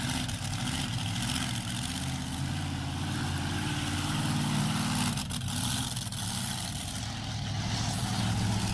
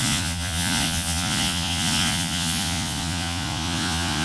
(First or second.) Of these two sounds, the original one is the first